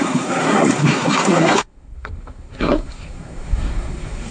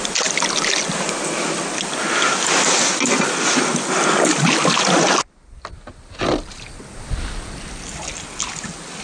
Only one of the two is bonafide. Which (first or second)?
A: second